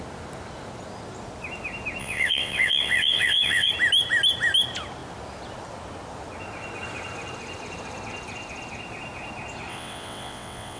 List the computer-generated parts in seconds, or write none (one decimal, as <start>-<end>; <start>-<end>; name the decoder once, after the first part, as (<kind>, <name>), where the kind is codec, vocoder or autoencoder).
2.0-3.7 (vocoder, WaveNeXt); 9.7-10.8